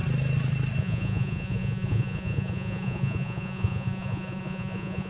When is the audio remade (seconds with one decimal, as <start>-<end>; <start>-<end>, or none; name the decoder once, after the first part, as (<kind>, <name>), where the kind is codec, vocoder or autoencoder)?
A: 0.8-5.1 (vocoder, Vocos)